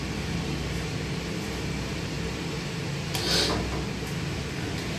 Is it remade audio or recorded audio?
recorded